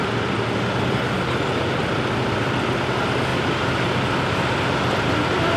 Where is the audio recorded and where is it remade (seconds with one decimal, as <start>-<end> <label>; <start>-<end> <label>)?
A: 0.0-5.6 recorded

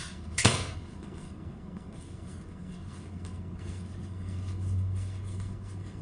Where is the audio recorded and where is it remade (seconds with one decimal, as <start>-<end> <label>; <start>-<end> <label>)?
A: 0.0-6.0 remade

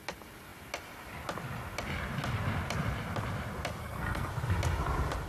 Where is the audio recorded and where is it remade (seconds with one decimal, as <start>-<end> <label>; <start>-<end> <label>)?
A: 0.0-3.8 recorded; 3.8-4.3 remade; 4.3-5.3 recorded